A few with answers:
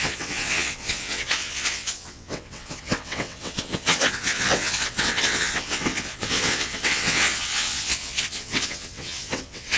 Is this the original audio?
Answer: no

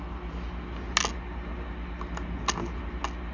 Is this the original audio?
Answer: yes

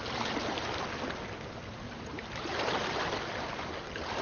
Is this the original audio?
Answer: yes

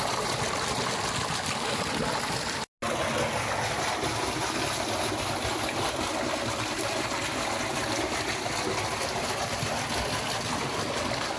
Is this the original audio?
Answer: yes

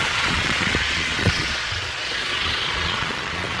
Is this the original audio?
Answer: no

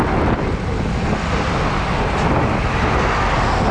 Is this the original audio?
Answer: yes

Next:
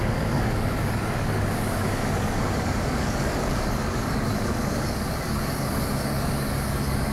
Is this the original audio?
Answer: no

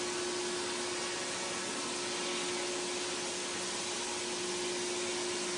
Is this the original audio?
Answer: yes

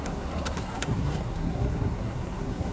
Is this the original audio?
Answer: no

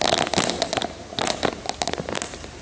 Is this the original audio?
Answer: yes